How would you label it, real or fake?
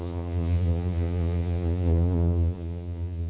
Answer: fake